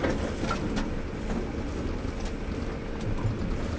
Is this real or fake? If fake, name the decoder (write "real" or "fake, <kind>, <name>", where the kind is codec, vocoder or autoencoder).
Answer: real